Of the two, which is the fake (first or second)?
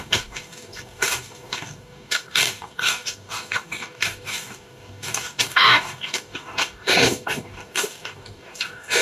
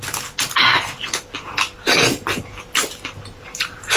first